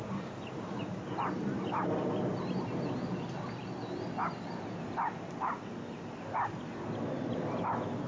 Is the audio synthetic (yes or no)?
no